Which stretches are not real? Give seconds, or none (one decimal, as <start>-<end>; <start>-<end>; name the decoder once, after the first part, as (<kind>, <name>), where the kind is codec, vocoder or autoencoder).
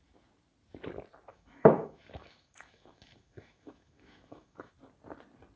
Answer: 1.3-4.7 (autoencoder, DAC-VAE)